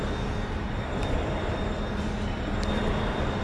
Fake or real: real